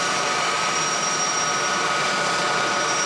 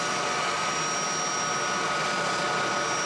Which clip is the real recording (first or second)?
second